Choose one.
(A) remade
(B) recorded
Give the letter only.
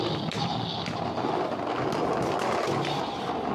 B